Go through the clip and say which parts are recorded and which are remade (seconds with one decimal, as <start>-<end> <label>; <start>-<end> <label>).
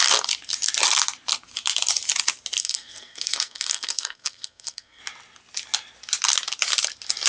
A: 0.0-2.6 recorded; 2.6-5.0 remade; 5.0-7.3 recorded